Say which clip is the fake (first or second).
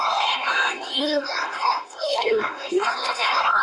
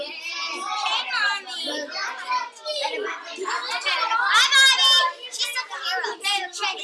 first